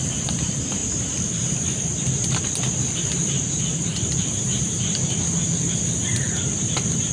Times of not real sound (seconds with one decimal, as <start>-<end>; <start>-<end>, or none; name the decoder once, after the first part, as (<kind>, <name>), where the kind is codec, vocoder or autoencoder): 0.0-0.8 (vocoder, BigVGAN v2); 2.4-7.1